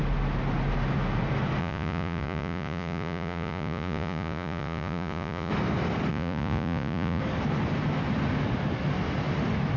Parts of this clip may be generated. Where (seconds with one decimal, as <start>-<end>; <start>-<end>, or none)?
1.6-5.5; 6.1-7.2